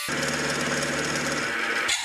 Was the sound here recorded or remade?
recorded